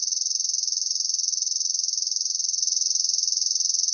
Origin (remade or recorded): remade